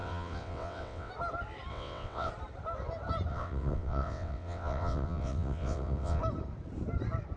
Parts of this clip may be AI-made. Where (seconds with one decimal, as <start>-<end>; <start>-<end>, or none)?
0.0-1.1; 1.7-2.3; 3.3-6.2